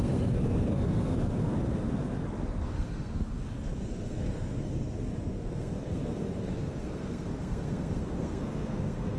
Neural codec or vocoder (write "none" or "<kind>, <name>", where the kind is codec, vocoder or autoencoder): codec, SNAC